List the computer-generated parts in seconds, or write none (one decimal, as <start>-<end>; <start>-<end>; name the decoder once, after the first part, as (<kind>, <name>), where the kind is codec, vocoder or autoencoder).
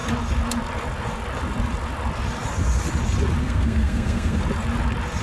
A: 3.4-4.4 (codec, SNAC)